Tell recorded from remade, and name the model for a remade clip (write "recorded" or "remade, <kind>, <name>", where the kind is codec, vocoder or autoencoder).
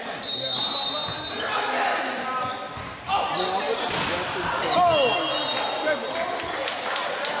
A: recorded